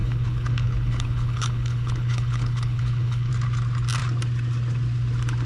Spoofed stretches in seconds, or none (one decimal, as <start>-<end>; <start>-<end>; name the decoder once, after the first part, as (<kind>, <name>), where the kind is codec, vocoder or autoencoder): 0.0-3.3 (codec, HILCodec)